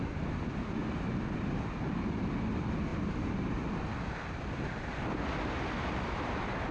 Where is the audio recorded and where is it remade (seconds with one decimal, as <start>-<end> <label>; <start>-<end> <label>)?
0.0-6.7 recorded